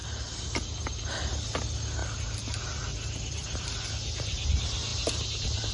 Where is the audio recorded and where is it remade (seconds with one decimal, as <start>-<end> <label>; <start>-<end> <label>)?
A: 0.0-5.7 recorded